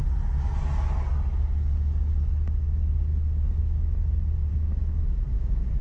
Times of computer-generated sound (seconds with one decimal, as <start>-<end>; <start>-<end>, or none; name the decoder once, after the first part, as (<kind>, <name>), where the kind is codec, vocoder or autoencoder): 4.5-5.0 (autoencoder, DAC-VAE)